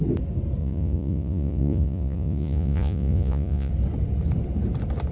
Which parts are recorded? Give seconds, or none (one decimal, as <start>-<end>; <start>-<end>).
0.0-0.6; 3.7-5.1